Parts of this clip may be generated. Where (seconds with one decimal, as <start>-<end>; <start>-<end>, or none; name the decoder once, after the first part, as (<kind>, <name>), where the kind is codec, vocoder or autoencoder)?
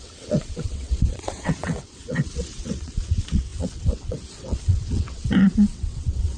0.0-6.4 (vocoder, WaveNeXt)